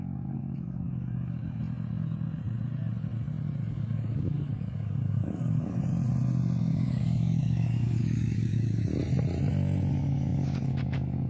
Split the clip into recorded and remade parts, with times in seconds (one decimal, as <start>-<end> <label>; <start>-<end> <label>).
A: 0.0-1.6 remade; 1.6-3.7 recorded; 3.7-5.9 remade; 5.9-6.6 recorded; 6.6-8.9 remade; 8.9-9.9 recorded; 9.9-11.3 remade